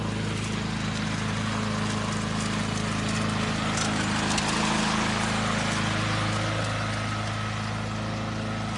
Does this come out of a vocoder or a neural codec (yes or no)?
no